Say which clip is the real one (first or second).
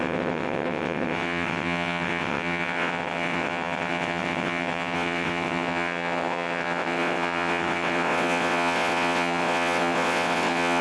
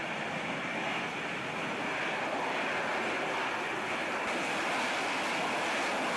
second